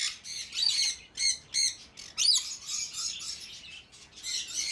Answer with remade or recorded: recorded